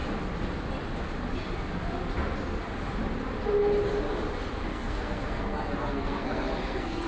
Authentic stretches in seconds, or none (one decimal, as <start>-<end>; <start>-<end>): 0.0-4.7